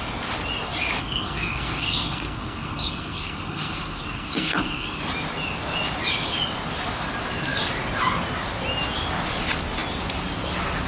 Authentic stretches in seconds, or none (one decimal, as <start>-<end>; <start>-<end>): 0.0-1.0; 5.0-10.9